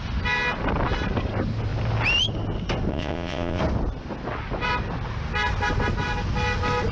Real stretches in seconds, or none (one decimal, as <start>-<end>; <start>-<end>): 0.0-2.9; 3.6-6.9